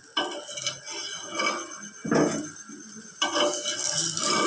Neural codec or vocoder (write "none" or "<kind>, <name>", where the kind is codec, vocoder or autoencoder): none